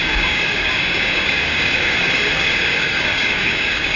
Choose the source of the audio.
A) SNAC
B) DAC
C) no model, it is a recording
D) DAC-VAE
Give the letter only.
B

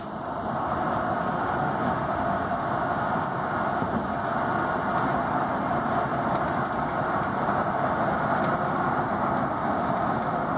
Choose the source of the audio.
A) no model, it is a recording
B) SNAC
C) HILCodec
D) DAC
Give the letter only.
A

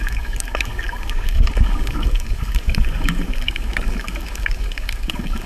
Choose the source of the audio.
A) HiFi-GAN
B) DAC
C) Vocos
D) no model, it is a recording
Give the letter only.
B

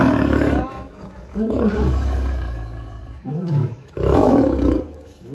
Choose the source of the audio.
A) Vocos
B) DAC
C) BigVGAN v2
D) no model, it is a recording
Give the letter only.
B